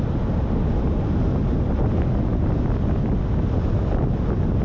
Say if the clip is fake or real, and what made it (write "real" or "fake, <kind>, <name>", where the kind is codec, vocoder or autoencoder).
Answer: real